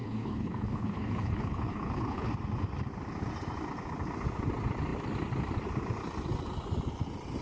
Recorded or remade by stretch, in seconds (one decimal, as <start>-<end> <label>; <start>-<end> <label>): 0.0-2.3 remade; 2.3-7.4 recorded